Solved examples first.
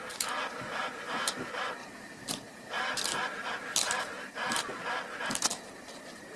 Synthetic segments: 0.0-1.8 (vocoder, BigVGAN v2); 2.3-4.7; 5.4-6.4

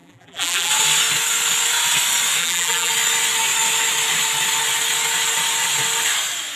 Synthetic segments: 0.0-0.7 (vocoder, BigVGAN v2); 2.4-2.9